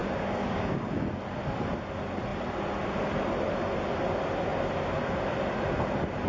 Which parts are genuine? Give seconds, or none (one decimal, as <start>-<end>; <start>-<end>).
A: 1.1-6.3